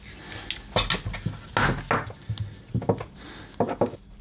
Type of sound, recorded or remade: recorded